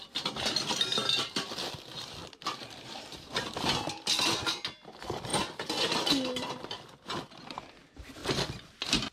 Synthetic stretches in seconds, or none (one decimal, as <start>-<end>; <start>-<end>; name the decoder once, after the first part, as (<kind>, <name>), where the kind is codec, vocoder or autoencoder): 0.0-2.2 (vocoder, BigVGAN v2); 3.0-5.3; 6.0-8.2